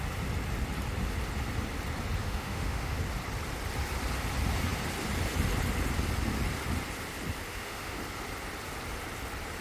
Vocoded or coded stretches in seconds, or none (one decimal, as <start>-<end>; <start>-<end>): 2.2-3.0; 7.5-8.0

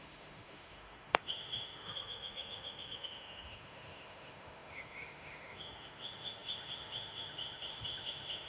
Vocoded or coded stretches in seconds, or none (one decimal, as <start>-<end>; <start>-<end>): 0.0-8.5

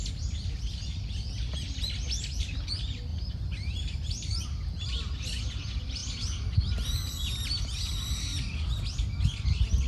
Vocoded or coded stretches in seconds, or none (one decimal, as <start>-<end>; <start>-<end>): 3.1-4.1

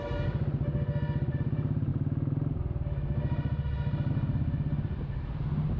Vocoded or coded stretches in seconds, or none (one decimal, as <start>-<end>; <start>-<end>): none

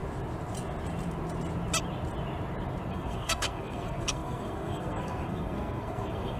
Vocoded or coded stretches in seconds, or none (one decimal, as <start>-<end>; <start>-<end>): 2.9-6.4